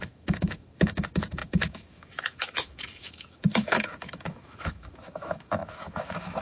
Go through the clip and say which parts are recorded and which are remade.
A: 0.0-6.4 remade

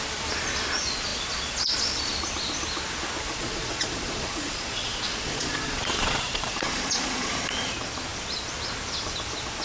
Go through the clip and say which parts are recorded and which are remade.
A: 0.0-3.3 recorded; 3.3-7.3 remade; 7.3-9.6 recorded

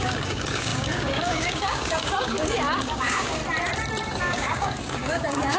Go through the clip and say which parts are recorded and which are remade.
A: 0.0-3.4 remade; 3.4-4.2 recorded; 4.2-5.6 remade

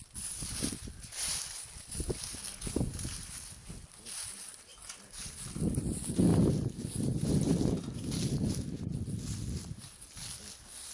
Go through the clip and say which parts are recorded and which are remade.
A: 0.0-10.9 recorded

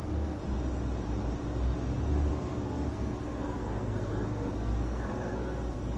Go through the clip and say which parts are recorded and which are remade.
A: 0.0-0.4 remade; 0.4-2.3 recorded; 2.3-6.0 remade

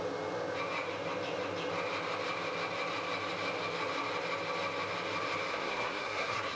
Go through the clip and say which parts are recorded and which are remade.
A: 0.0-5.5 recorded; 5.5-6.6 remade